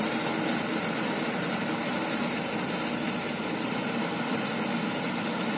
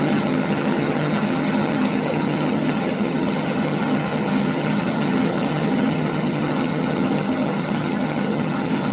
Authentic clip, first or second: first